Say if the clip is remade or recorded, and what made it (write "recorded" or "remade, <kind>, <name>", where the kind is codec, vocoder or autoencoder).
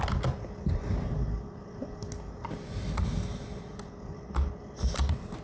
recorded